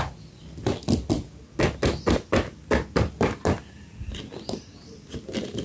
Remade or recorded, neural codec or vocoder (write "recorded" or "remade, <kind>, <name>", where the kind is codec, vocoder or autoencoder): recorded